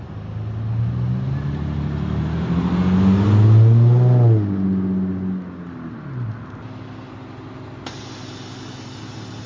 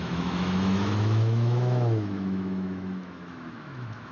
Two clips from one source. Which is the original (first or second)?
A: first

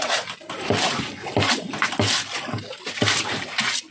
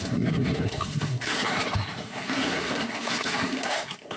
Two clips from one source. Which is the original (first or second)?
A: first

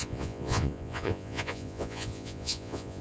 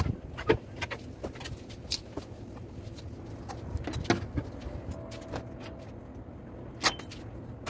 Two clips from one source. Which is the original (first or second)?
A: second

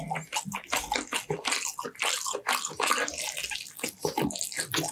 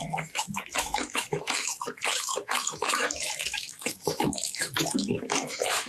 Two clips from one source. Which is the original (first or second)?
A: first